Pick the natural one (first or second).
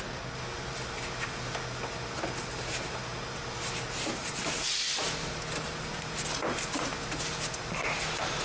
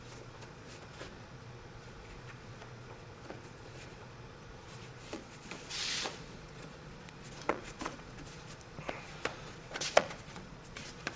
first